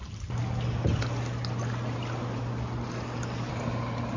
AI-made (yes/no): no